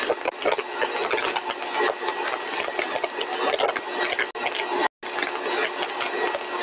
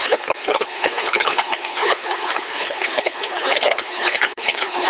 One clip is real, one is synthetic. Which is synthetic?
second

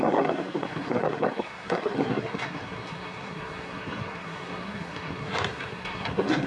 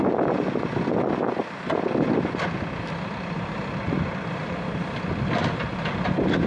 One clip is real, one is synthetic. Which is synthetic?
first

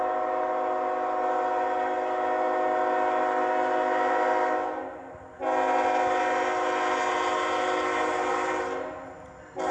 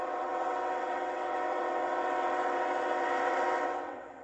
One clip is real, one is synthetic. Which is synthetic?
second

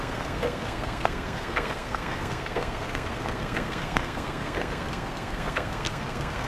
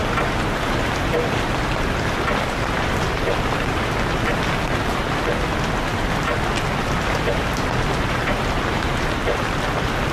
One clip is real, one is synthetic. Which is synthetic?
first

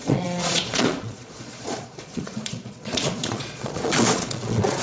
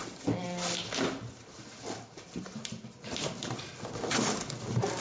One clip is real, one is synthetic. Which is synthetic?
first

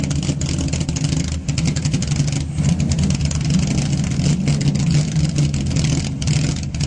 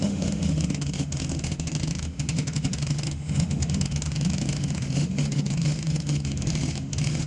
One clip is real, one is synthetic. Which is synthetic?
second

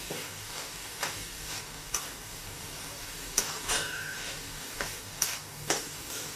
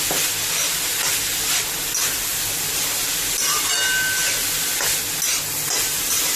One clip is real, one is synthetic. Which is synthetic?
first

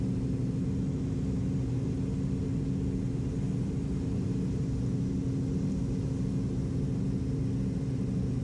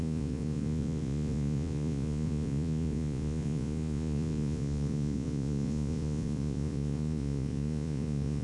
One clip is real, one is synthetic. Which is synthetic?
second